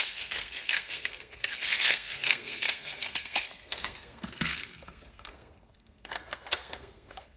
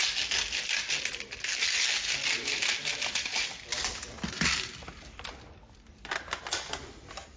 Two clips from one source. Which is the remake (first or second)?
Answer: first